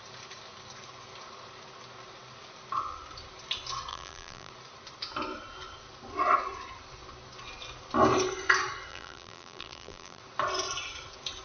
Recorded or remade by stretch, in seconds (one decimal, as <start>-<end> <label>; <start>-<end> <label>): 0.0-3.9 recorded; 3.9-4.5 remade; 4.5-8.9 recorded; 8.9-10.2 remade; 10.2-11.4 recorded